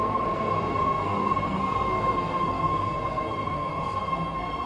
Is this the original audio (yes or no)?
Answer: no